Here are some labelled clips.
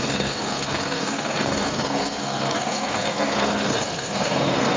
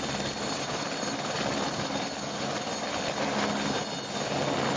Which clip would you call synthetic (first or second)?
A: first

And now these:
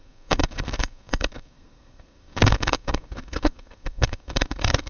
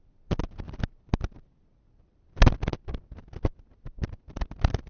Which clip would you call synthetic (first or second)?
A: first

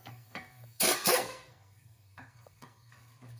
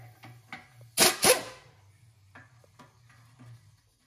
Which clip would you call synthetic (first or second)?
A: first